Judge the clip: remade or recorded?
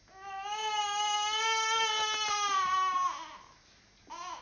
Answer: recorded